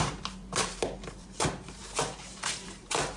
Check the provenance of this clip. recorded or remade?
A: remade